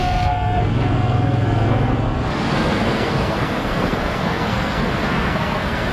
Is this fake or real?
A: fake